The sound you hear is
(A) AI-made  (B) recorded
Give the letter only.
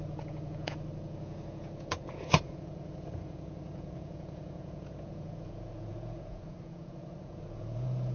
A